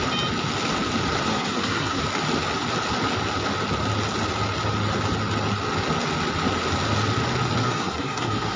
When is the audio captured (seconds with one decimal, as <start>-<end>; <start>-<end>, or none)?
0.0-1.3; 2.0-7.6